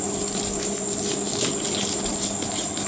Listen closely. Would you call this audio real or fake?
real